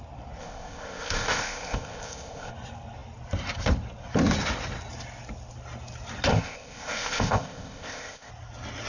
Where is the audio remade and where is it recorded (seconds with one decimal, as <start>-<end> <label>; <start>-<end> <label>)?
0.0-0.4 recorded; 0.4-2.5 remade; 2.5-6.3 recorded; 6.3-8.3 remade; 8.3-8.9 recorded